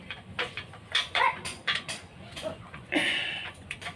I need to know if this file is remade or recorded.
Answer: remade